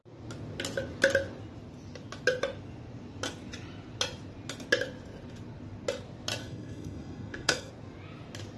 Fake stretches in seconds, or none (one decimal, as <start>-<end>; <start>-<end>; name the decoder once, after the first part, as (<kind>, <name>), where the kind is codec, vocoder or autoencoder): 6.4-7.7 (codec, SNAC)